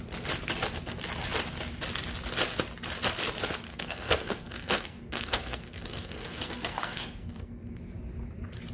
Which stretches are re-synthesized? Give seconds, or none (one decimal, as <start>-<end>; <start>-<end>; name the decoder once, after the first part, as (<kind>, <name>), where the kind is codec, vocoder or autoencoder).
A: 3.7-7.8 (codec, SNAC)